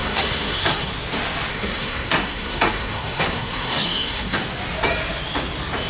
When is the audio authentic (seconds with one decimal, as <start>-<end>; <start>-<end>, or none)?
0.9-1.5; 4.4-5.9